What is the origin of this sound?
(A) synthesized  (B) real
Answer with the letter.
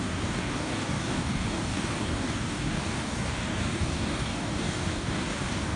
A